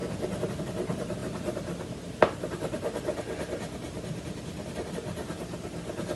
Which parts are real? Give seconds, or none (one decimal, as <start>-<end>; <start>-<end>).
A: 0.0-6.2